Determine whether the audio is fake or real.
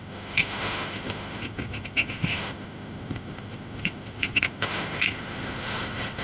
fake